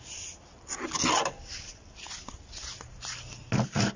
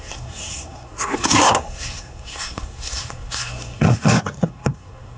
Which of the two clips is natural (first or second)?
first